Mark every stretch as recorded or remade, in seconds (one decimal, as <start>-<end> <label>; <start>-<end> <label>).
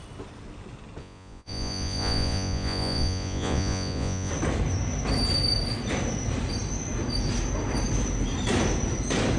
0.0-1.0 recorded; 1.0-4.3 remade; 4.3-9.4 recorded